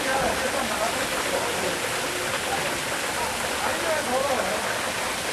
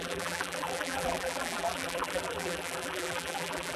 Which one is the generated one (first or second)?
second